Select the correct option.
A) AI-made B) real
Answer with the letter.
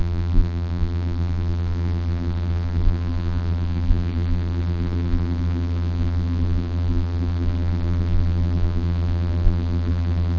A